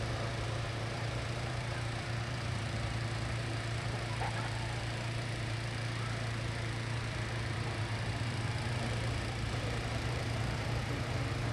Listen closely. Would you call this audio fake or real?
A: fake